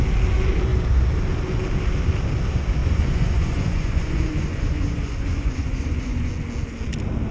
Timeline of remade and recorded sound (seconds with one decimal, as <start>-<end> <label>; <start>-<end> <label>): 0.0-2.8 recorded; 2.8-6.3 remade; 6.3-7.3 recorded